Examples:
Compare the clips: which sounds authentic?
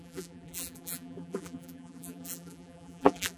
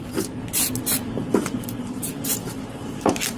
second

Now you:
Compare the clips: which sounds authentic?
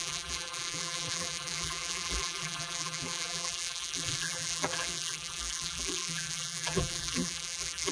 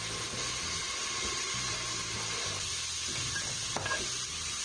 second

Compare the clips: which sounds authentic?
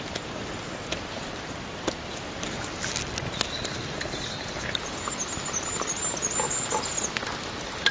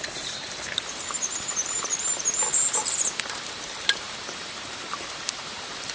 first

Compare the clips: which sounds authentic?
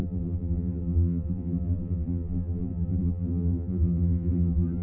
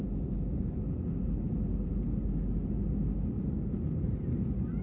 second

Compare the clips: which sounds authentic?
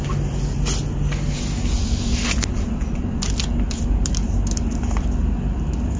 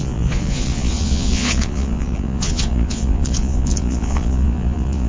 first